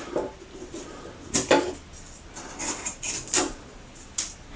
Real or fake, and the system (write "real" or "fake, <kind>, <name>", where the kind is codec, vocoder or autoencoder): real